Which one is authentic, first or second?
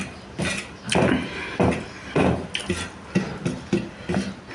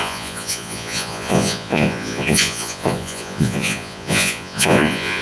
first